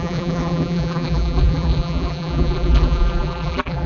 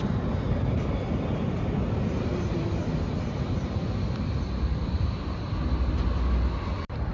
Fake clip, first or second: first